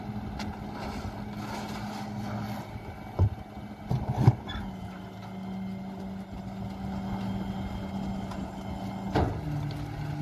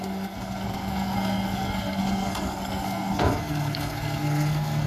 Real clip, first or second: first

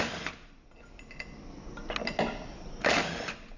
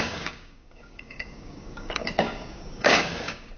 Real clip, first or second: first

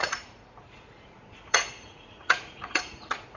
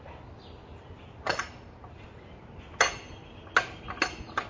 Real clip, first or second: second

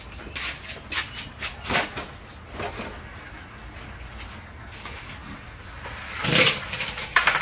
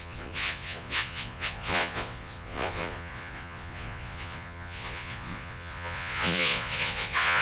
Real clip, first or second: first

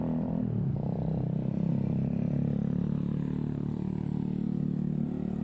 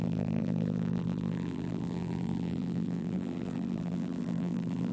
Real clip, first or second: first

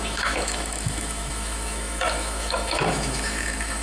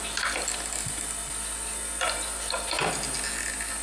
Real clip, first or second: second